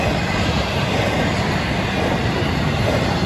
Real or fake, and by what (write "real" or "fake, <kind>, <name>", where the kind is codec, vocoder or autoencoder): real